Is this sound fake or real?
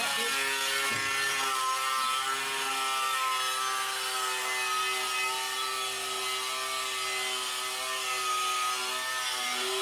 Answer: real